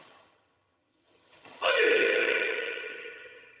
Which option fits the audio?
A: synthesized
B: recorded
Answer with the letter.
A